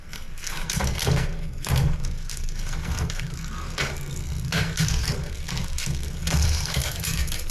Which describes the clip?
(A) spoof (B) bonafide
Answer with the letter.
A